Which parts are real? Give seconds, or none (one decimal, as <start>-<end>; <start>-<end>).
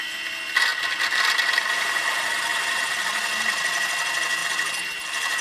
0.0-0.7; 1.3-4.4